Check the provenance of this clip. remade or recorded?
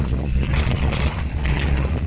remade